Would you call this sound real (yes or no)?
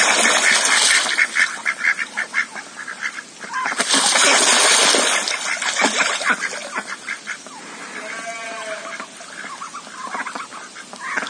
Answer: yes